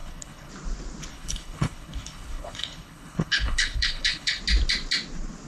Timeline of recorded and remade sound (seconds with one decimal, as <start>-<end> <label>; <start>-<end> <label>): 0.0-0.5 remade; 0.5-1.1 recorded; 1.1-4.4 remade; 4.4-5.5 recorded